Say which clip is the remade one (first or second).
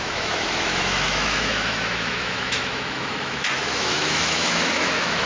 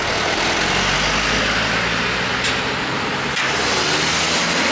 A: first